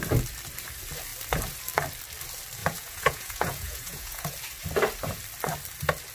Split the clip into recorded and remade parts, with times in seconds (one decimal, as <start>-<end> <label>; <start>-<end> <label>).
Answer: 0.0-2.6 recorded; 2.6-4.3 remade; 4.3-6.1 recorded